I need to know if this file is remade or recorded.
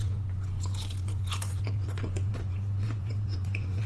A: remade